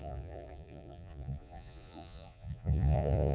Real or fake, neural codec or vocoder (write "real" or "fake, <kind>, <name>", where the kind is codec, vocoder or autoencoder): fake, vocoder, Vocos